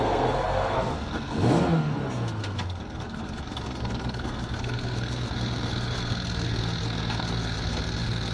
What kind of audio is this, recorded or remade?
remade